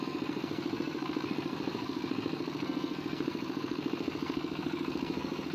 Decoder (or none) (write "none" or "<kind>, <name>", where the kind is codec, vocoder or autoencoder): codec, SNAC